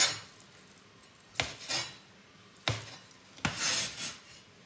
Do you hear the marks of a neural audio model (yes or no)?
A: no